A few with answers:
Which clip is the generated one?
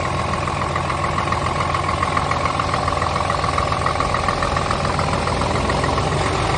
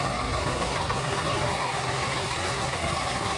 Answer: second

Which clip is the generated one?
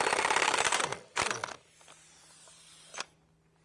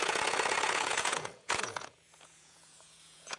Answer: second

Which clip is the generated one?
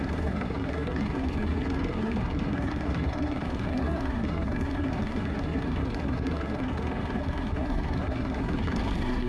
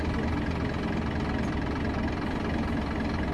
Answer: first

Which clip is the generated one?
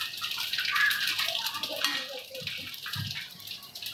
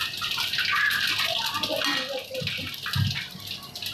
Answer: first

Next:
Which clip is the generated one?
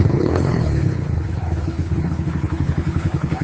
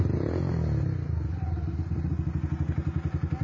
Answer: first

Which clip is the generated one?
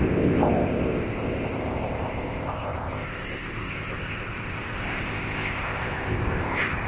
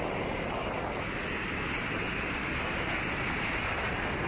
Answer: first